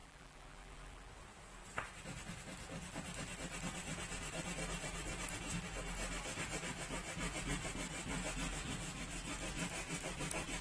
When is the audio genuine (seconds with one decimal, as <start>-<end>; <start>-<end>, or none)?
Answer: 1.1-10.6